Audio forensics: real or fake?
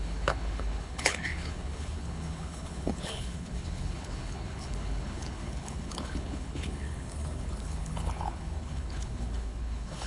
fake